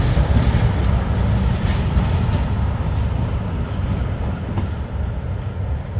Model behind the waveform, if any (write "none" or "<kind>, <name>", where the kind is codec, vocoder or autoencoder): none